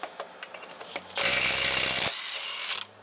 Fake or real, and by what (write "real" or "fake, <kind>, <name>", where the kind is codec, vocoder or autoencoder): real